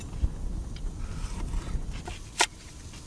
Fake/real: real